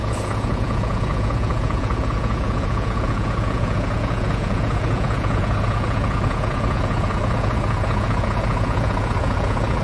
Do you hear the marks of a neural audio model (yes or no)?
yes